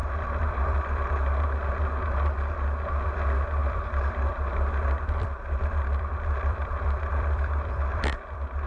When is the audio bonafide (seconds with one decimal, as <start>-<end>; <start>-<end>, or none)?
1.3-3.6